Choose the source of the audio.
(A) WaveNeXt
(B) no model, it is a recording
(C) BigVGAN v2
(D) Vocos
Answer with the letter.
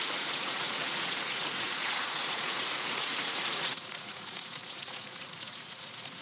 D